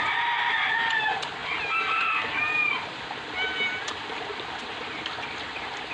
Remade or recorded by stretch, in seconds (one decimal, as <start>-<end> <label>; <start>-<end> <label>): 0.0-5.9 recorded